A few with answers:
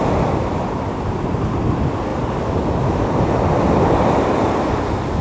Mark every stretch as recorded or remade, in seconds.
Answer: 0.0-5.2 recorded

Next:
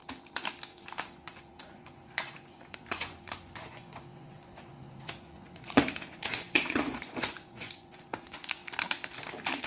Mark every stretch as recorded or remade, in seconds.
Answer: 0.0-0.7 recorded; 0.7-8.6 remade; 8.6-9.7 recorded

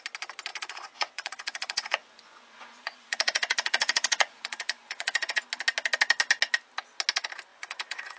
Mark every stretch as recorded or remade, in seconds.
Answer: 0.0-0.5 recorded; 0.5-5.4 remade; 5.4-7.5 recorded; 7.5-8.2 remade

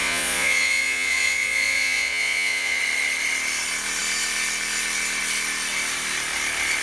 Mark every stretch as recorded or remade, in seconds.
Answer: 0.0-2.8 remade; 2.8-6.8 recorded

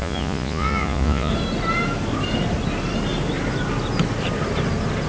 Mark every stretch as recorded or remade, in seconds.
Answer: 0.0-1.3 remade; 1.3-5.1 recorded

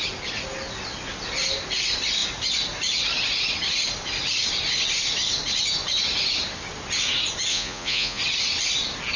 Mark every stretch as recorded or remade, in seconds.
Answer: 0.0-7.5 recorded; 7.5-8.2 remade; 8.2-9.2 recorded

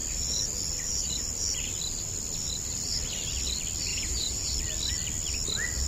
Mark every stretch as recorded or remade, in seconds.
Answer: 0.0-3.9 recorded; 3.9-4.5 remade; 4.5-5.9 recorded

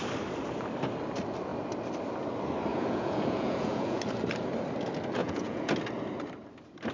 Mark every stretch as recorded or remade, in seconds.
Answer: 0.0-2.7 recorded; 2.7-4.0 remade; 4.0-5.2 recorded; 5.2-5.7 remade; 5.7-6.9 recorded